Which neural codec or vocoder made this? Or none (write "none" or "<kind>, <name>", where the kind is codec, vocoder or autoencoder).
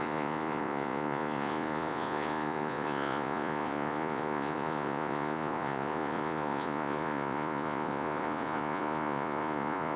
vocoder, Vocos